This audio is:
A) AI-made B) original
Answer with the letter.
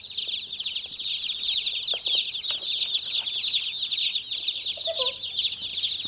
B